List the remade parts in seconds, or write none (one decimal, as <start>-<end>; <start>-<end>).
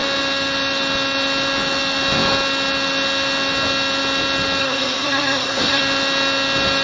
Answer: 4.6-5.8